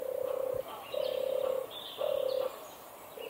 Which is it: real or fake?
real